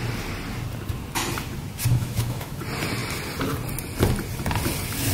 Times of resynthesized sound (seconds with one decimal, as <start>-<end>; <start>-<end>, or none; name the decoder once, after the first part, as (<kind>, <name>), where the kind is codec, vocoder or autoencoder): 1.9-2.6 (autoencoder, DAC-VAE)